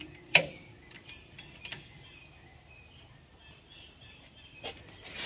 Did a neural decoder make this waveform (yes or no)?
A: no